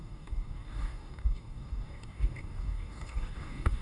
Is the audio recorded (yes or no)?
no